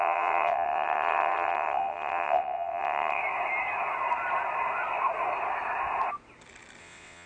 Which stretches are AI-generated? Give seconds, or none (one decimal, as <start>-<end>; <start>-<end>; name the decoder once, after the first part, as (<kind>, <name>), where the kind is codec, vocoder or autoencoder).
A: 0.0-3.2 (vocoder, WaveNeXt); 6.8-7.3